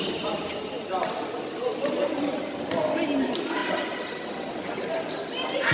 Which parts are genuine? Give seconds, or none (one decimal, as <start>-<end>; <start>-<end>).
0.0-5.7

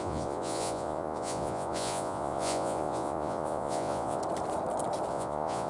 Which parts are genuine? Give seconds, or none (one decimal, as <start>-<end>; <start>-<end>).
4.2-5.1

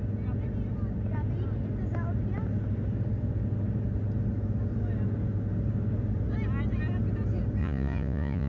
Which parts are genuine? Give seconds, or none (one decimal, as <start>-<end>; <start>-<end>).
0.0-7.6

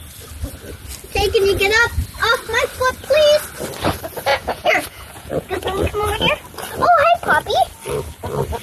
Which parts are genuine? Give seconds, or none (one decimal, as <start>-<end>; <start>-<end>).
0.0-4.3; 6.2-8.6

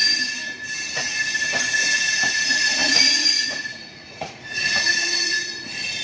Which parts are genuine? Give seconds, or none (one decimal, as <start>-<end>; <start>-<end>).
0.0-1.8